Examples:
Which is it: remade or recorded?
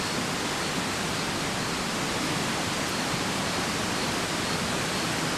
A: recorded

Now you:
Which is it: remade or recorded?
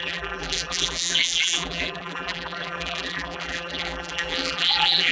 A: remade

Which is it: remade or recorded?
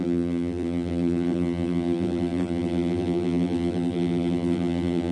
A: remade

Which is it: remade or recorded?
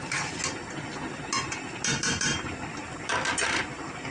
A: recorded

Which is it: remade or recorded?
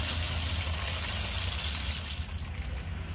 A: recorded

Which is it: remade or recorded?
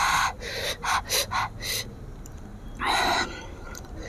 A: recorded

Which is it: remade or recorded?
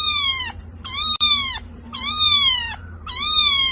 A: remade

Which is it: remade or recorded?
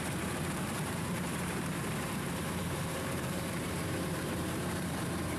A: remade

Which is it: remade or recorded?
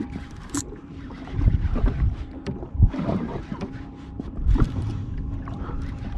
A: remade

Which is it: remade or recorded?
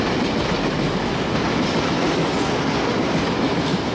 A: recorded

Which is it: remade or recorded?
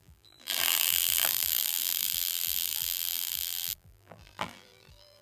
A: remade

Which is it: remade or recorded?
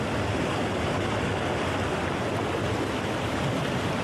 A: recorded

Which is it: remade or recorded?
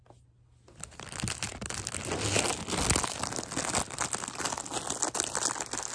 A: recorded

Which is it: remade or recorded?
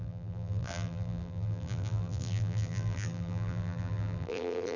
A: remade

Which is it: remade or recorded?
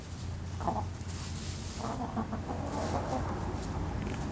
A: recorded